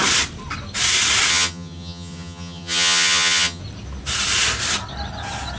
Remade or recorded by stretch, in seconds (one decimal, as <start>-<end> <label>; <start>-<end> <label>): 0.0-1.3 recorded; 1.3-3.6 remade; 3.6-5.6 recorded